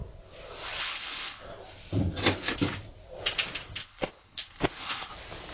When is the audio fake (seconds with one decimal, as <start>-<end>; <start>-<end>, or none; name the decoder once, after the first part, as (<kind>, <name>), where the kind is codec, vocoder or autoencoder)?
0.8-1.4 (codec, HILCodec); 3.8-5.1